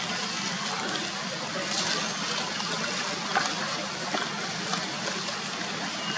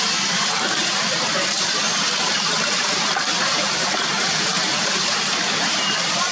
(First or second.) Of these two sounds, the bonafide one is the first